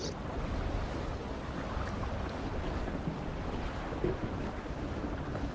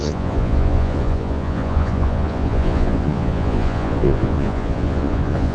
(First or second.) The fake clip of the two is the second